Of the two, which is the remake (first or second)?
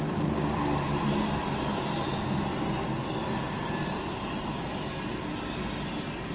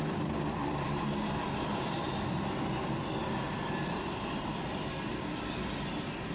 second